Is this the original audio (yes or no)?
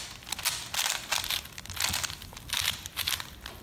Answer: yes